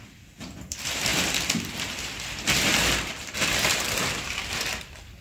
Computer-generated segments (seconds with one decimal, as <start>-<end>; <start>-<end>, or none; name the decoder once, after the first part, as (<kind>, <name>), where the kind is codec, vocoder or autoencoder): 0.0-5.2 (vocoder, BigVGAN v2)